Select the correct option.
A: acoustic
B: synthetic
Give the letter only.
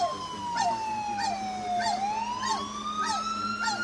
A